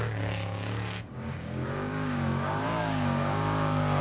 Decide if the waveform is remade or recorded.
remade